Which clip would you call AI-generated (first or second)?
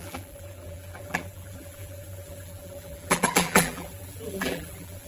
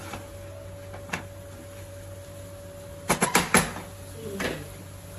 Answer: first